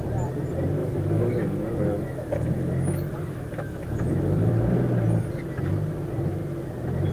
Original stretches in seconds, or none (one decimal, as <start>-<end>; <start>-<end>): 0.0-0.8; 4.5-7.1